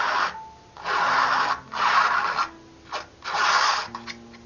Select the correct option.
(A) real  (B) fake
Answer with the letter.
A